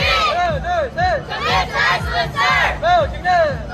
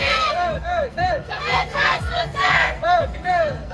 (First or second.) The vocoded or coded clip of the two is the second